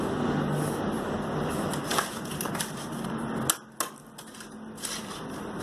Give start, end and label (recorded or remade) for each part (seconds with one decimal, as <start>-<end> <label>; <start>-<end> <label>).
0.0-5.6 recorded